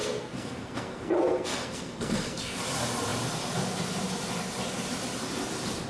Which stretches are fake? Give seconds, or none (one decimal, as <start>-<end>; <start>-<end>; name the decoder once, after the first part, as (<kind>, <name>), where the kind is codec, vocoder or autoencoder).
0.0-2.6 (codec, SNAC)